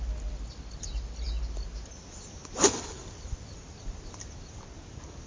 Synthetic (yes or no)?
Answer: no